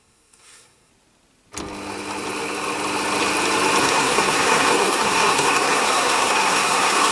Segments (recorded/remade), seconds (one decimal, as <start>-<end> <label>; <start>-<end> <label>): 0.0-0.9 remade; 0.9-3.8 recorded; 3.8-7.1 remade